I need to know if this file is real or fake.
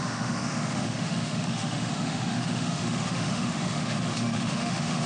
fake